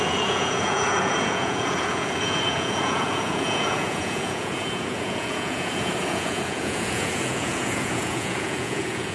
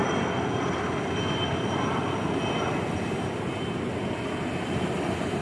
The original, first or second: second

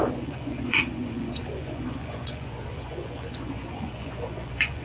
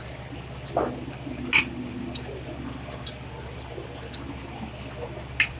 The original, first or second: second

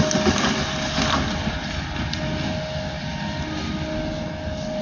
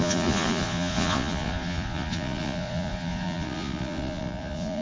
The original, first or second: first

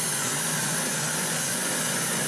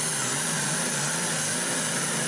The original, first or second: second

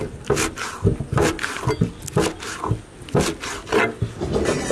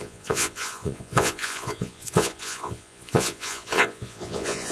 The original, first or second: first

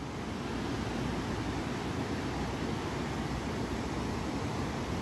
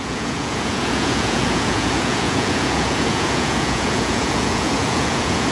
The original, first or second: first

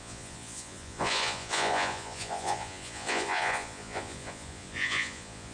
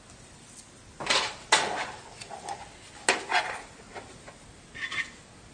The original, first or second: second